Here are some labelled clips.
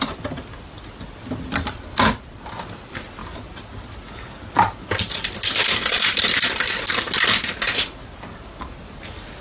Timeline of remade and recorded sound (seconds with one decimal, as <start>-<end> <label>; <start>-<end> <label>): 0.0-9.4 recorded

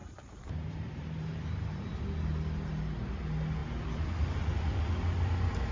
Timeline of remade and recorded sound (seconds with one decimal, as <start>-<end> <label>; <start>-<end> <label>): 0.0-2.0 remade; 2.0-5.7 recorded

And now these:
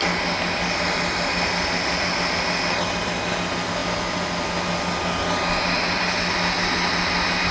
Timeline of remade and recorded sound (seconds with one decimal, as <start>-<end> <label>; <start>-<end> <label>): 0.0-7.5 recorded

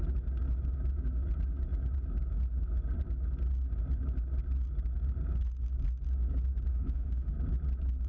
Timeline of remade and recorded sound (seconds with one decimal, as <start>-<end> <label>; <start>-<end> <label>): 0.0-6.7 recorded; 6.7-7.3 remade; 7.3-8.1 recorded